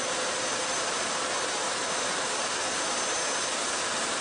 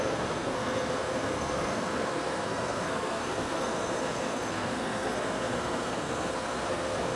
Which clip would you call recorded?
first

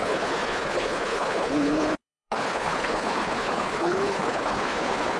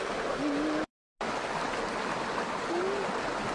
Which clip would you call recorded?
second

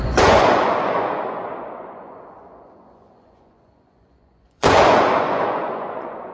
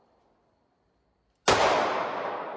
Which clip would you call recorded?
second